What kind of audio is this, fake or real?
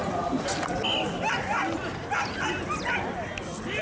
real